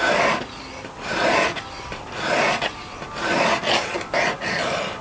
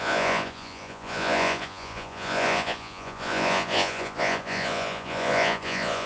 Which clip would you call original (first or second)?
first